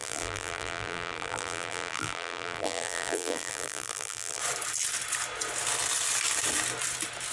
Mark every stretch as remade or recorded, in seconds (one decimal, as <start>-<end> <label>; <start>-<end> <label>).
0.0-4.4 remade; 4.4-7.3 recorded

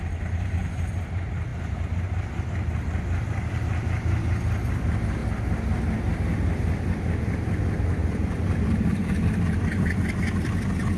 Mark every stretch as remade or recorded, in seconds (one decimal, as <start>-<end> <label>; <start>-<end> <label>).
0.0-11.0 remade